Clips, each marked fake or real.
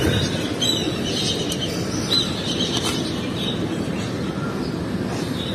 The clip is real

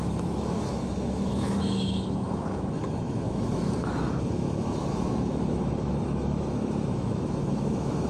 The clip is fake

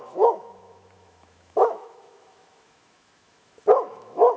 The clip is fake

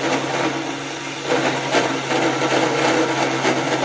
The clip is real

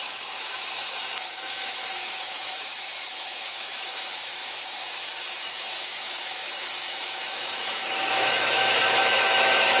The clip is fake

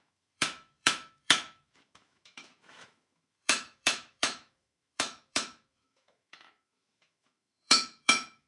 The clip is fake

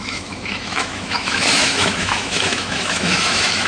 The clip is fake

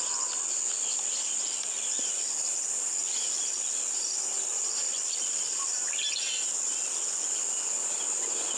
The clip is real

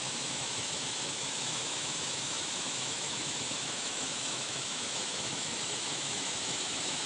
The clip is fake